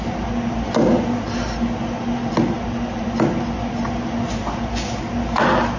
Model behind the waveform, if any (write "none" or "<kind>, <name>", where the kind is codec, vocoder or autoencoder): none